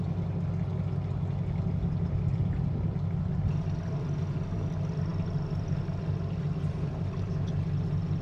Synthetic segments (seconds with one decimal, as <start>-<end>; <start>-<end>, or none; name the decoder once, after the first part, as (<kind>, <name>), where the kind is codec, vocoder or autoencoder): none